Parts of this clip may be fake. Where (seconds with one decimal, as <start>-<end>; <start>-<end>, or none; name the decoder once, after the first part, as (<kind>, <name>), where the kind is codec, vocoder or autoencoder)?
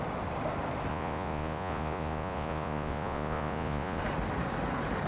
0.9-4.0 (vocoder, Vocos)